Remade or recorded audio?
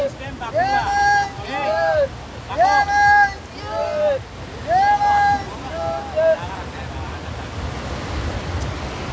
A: recorded